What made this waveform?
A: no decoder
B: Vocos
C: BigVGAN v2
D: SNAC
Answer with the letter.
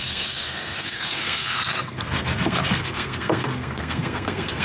D